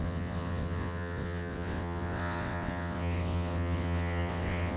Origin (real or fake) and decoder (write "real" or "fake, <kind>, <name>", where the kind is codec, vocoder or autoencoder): fake, vocoder, WaveNeXt